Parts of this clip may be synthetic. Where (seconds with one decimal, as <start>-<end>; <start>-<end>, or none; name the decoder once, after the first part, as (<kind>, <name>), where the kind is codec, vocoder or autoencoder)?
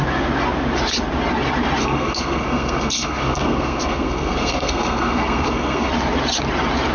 1.8-5.9 (codec, SNAC)